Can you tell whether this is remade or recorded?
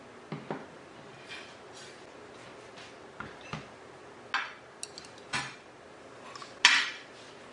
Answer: recorded